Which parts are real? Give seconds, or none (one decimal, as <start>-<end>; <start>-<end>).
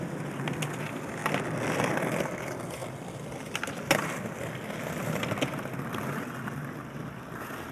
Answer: 0.0-7.7